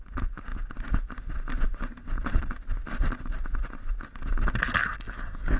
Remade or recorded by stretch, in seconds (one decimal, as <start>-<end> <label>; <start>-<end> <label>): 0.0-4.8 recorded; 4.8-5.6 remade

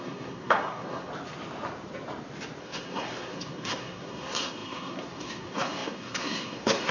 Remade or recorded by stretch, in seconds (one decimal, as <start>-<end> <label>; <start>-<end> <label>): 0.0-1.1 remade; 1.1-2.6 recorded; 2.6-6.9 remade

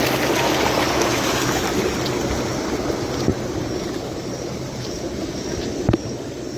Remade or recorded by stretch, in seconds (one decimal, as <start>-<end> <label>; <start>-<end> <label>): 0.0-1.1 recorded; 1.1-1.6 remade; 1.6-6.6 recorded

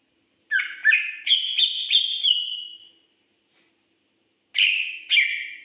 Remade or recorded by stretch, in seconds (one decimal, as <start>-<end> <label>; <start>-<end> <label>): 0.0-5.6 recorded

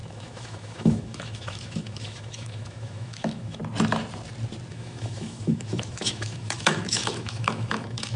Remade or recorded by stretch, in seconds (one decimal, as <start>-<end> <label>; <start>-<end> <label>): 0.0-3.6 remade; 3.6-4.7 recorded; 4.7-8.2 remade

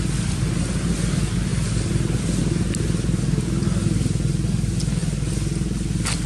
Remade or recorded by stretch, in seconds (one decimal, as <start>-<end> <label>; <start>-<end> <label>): 0.0-6.3 recorded

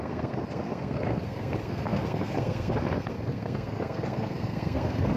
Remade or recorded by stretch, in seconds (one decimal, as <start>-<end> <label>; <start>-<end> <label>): 0.0-5.2 remade